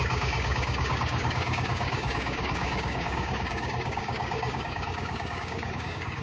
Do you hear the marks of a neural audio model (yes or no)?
yes